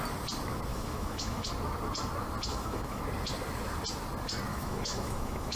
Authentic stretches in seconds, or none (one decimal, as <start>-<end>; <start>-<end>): 0.0-0.7; 1.5-2.5; 3.0-4.5